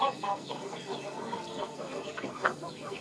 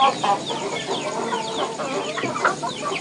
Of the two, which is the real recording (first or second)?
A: second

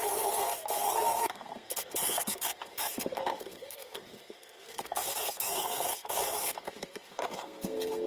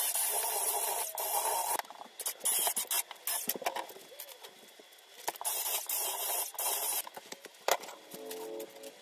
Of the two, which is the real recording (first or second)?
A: second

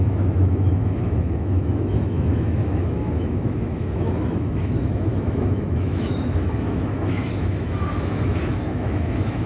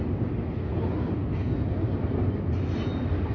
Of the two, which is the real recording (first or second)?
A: second